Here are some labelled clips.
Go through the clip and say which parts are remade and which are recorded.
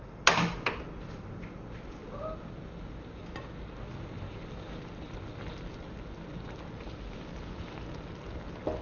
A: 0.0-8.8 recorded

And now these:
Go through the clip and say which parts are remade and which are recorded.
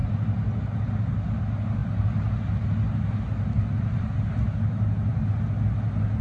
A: 0.0-6.2 recorded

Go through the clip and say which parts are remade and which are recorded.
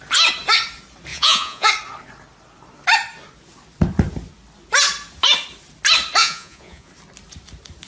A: 0.0-1.1 recorded; 1.1-1.7 remade; 1.7-6.2 recorded; 6.2-6.9 remade; 6.9-7.9 recorded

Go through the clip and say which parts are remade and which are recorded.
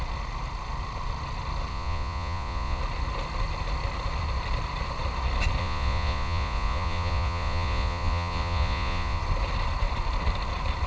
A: 0.0-1.7 recorded; 1.7-2.8 remade; 2.8-5.6 recorded; 5.6-9.2 remade; 9.2-10.9 recorded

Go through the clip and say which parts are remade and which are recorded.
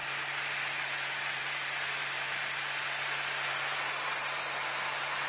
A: 0.0-5.3 recorded